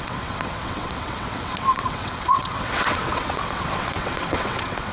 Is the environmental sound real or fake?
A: fake